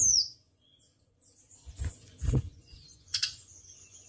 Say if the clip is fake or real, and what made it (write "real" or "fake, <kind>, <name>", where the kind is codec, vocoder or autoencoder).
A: fake, vocoder, Vocos